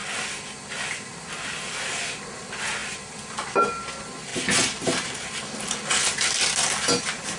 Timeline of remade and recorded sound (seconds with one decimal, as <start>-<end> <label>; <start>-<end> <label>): 0.0-7.4 recorded